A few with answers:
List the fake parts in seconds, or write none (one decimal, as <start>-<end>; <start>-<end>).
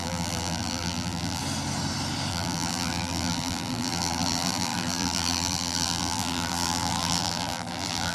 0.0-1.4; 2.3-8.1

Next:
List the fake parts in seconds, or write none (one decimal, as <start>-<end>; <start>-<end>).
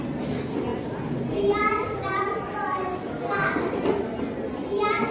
0.7-3.8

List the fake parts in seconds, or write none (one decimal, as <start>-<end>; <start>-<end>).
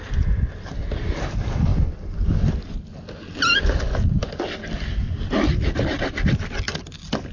none